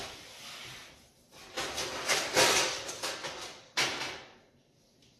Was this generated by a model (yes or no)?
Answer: no